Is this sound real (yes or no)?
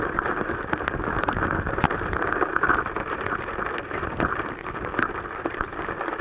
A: yes